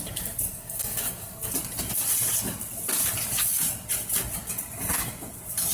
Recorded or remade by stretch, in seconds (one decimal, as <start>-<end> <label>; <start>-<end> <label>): 0.0-0.5 recorded; 0.5-1.5 remade; 1.5-5.7 recorded